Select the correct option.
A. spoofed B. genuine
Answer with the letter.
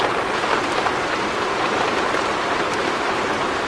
A